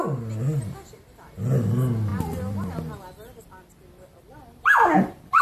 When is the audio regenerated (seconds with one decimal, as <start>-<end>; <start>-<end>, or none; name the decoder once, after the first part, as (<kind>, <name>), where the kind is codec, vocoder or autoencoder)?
none